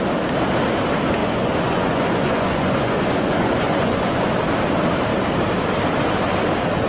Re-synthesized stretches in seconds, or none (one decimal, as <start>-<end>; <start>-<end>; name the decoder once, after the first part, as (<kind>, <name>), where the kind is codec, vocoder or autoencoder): 1.2-4.3 (vocoder, Vocos)